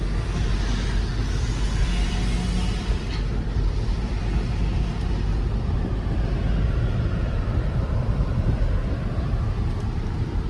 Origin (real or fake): real